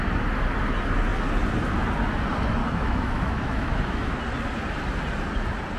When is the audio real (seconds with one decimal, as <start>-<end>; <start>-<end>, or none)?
0.0-2.6; 4.2-5.8